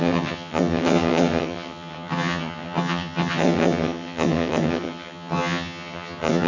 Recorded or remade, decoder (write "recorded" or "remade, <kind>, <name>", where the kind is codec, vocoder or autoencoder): remade, vocoder, HiFi-GAN